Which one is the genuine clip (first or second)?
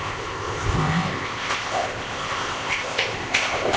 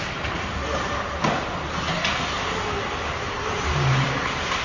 second